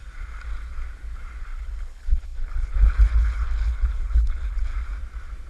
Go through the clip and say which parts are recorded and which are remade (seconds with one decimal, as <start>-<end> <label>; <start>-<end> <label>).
0.0-1.4 recorded; 1.4-4.7 remade; 4.7-5.5 recorded